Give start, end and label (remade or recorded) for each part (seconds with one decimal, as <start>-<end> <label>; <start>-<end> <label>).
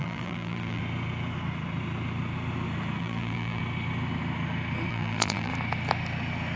0.0-0.8 remade; 0.8-3.0 recorded; 3.0-3.6 remade; 3.6-4.9 recorded; 4.9-5.5 remade; 5.5-6.6 recorded